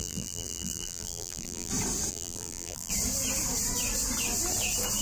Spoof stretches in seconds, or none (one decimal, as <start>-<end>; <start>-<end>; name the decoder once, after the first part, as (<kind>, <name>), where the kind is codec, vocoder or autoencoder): 0.0-1.7 (vocoder, BigVGAN v2); 2.1-2.9

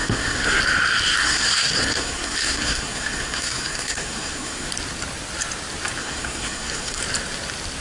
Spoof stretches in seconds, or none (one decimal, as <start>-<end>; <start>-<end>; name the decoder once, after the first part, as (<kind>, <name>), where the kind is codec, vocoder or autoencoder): 0.0-0.6 (codec, SNAC); 1.2-4.7; 6.0-7.0

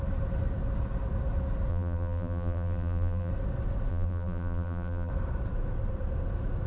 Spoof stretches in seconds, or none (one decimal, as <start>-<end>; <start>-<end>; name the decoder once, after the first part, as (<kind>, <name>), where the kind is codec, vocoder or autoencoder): 1.7-3.3 (vocoder, BigVGAN v2); 3.9-5.1

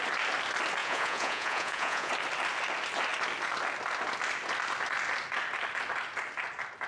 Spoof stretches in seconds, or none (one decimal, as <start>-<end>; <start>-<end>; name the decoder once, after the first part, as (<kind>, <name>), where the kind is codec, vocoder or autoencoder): 0.8-2.1 (vocoder, Vocos)

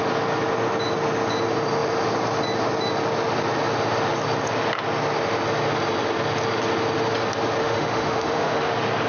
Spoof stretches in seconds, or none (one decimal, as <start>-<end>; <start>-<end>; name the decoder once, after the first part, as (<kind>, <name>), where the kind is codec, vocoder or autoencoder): 7.6-8.7 (autoencoder, DAC-VAE)

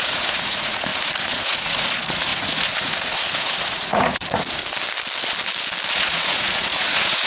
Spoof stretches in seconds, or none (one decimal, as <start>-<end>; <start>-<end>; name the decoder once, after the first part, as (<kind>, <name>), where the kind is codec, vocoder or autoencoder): 0.0-4.6 (vocoder, Vocos); 5.9-7.3